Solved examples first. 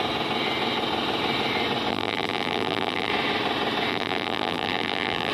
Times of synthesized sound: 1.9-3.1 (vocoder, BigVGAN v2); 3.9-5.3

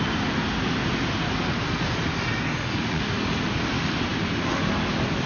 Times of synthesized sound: 2.5-3.0 (vocoder, Vocos)